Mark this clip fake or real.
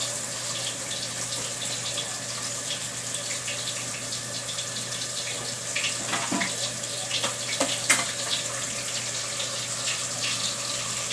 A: real